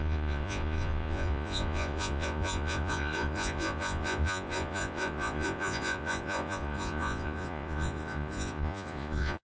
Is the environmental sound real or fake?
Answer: fake